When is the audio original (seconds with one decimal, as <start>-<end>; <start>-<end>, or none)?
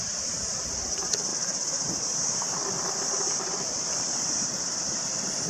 2.6-3.1